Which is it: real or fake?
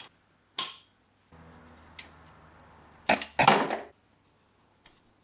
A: real